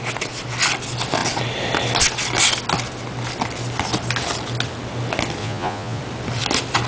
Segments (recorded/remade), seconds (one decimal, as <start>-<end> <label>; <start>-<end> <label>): 0.0-5.4 recorded; 5.4-6.0 remade; 6.0-6.9 recorded